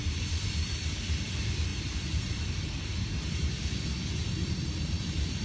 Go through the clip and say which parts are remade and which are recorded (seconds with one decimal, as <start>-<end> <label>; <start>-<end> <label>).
0.0-1.7 recorded; 1.7-3.5 remade; 3.5-4.2 recorded; 4.2-5.4 remade

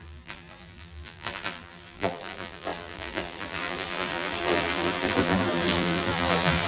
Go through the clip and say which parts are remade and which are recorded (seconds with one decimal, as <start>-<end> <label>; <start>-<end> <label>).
0.0-6.7 remade

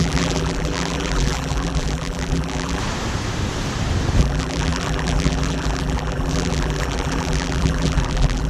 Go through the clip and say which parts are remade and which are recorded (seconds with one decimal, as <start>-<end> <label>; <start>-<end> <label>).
0.0-2.8 remade; 2.8-4.2 recorded; 4.2-8.5 remade